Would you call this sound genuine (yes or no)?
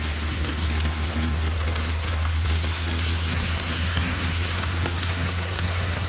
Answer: no